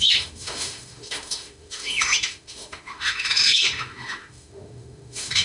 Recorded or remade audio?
remade